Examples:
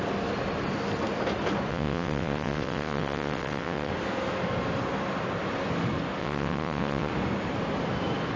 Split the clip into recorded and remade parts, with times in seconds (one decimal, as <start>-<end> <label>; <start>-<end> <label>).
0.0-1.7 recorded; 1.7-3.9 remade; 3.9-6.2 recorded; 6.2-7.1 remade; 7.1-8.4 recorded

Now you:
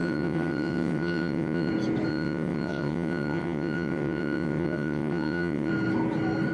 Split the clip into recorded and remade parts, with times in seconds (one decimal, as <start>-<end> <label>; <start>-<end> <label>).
0.0-1.7 remade; 1.7-2.1 recorded; 2.1-5.7 remade; 5.7-6.5 recorded

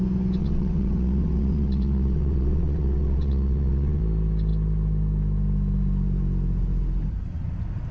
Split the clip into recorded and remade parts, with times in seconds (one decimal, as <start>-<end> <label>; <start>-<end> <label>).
0.0-0.4 recorded; 0.4-4.0 remade; 4.0-7.9 recorded

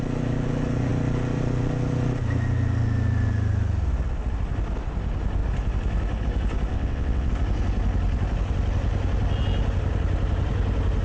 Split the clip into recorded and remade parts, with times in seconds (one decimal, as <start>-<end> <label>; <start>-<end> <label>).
0.0-6.7 recorded; 6.7-7.3 remade; 7.3-11.0 recorded

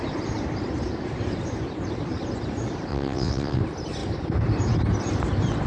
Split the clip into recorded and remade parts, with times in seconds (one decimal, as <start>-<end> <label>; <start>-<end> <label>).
0.0-2.9 recorded; 2.9-3.6 remade; 3.6-5.7 recorded